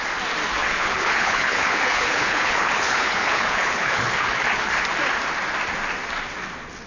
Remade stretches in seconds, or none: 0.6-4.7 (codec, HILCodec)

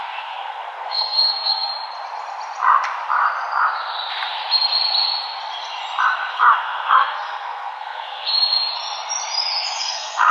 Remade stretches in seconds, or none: 0.0-1.7 (codec, SNAC); 6.3-8.3; 9.8-10.3

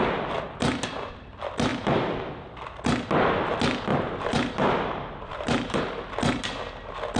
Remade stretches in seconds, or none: 1.7-2.3 (vocoder, BigVGAN v2); 3.9-5.9

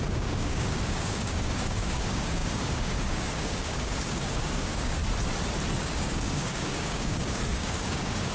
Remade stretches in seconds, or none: 0.0-5.0 (codec, DAC); 5.8-8.3

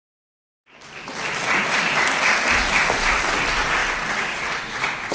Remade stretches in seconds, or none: none

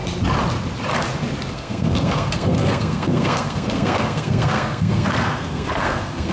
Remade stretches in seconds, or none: 1.5-6.3 (codec, SNAC)

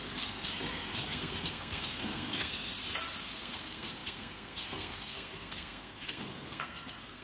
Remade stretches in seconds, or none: 0.0-2.7 (codec, SNAC); 3.2-7.2

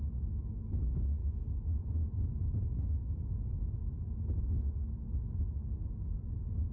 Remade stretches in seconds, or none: none